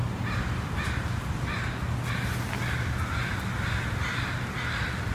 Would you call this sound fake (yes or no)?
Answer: no